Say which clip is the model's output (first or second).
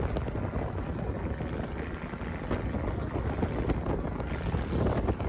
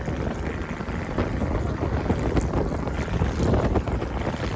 second